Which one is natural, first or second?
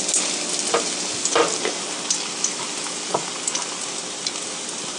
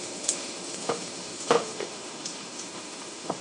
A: first